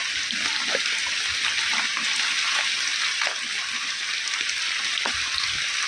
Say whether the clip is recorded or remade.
recorded